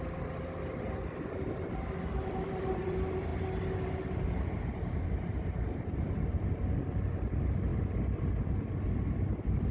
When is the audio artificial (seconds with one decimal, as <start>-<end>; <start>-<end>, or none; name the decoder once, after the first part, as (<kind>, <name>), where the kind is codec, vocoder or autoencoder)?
0.0-3.3 (vocoder, BigVGAN v2); 4.4-7.7; 8.9-9.7